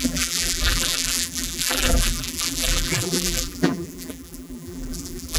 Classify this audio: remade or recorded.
remade